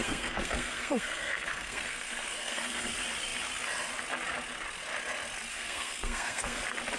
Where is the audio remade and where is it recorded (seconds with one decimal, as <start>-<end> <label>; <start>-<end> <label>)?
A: 0.0-2.9 remade; 2.9-5.5 recorded; 5.5-6.6 remade; 6.6-7.0 recorded